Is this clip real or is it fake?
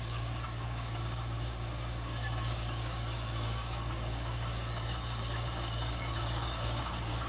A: fake